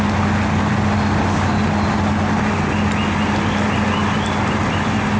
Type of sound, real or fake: real